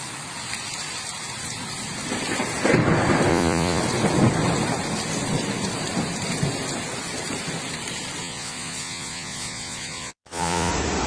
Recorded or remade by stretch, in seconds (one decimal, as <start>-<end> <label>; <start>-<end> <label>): 0.0-3.3 recorded; 3.3-3.8 remade; 3.8-8.2 recorded; 8.2-10.7 remade; 10.7-11.1 recorded